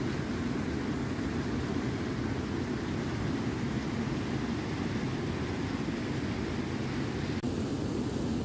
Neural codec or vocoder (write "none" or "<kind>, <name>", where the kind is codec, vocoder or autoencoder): none